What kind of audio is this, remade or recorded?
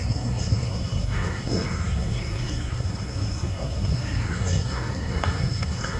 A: remade